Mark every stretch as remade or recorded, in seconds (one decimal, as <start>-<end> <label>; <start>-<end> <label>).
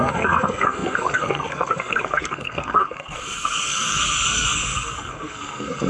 0.0-5.9 remade